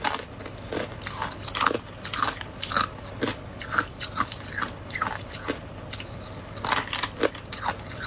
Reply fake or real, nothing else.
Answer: real